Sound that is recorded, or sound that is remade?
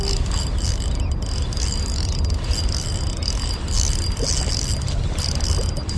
recorded